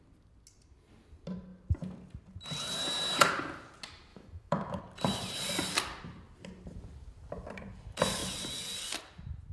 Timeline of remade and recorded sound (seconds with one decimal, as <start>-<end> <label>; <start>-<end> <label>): 0.0-4.1 recorded; 4.1-4.8 remade; 4.8-9.5 recorded